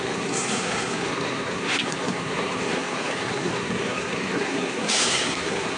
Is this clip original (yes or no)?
no